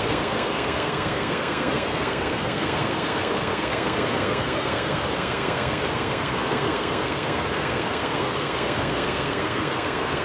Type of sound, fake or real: fake